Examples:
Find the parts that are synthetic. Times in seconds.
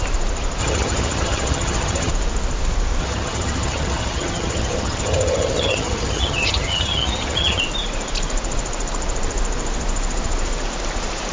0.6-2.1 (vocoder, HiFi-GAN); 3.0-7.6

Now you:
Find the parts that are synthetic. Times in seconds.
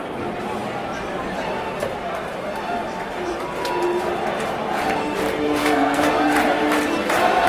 5.6-6.1 (codec, SNAC)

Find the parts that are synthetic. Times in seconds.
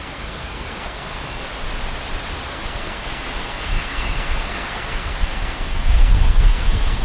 0.0-1.5 (codec, SNAC); 2.5-7.0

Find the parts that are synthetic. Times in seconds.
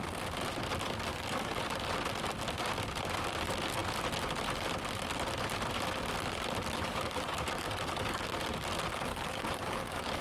1.1-1.6 (codec, DAC); 6.6-8.3; 9.1-10.2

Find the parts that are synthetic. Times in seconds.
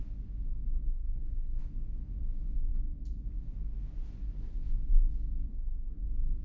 0.9-1.6 (codec, SNAC); 5.5-6.0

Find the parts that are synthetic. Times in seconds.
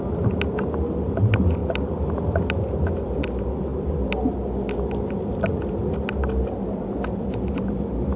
none